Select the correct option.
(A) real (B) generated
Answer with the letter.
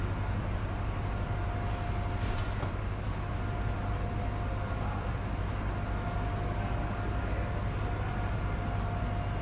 A